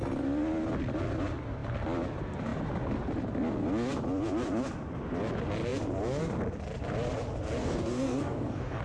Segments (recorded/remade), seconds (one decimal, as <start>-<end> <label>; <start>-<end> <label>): 0.0-7.6 recorded; 7.6-8.8 remade